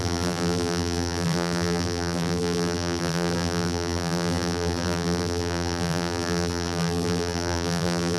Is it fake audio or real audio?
fake